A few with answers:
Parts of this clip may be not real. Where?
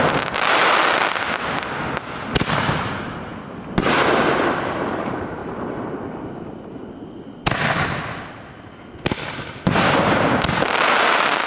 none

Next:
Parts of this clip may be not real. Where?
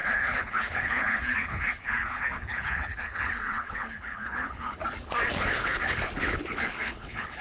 0.0-4.8; 5.4-7.4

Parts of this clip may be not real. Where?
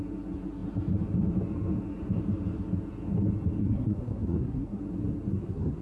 3.6-4.8; 5.3-5.8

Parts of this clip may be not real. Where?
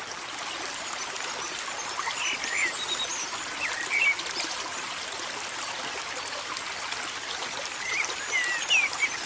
none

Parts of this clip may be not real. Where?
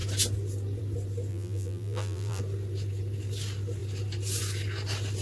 1.3-2.4